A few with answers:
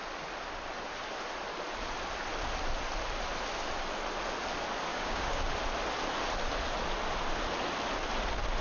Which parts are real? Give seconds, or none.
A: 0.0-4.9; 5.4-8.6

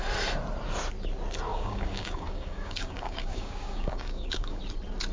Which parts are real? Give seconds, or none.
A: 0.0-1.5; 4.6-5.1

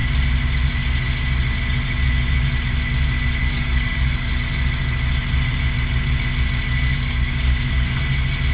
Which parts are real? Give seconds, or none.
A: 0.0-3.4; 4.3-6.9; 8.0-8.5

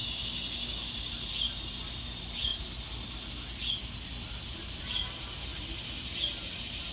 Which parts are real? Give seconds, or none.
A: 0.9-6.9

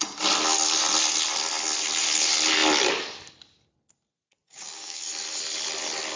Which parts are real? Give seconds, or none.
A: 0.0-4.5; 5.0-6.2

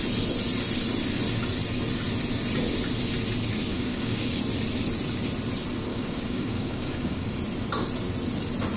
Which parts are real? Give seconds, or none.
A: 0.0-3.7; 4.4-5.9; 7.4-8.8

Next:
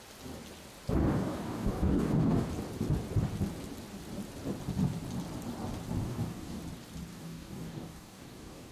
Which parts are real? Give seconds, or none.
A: 0.0-1.0; 2.5-6.0; 6.6-7.1